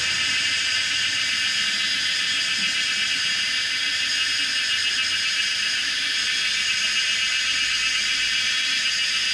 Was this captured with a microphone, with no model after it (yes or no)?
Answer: yes